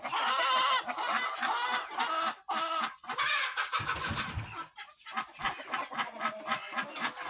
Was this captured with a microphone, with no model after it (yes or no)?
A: yes